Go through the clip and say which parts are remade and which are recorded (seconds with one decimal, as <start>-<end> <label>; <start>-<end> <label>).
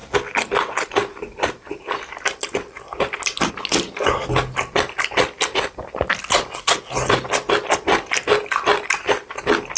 0.0-9.8 recorded